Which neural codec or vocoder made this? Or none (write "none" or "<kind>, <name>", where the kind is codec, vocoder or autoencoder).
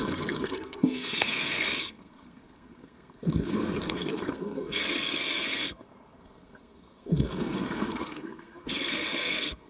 codec, SNAC